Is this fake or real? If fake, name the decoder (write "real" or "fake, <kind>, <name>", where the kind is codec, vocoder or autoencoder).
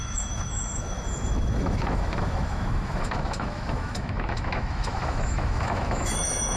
fake, autoencoder, DAC-VAE